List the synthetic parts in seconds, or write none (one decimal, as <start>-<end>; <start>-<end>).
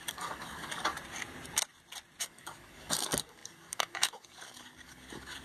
0.0-0.9; 2.2-5.4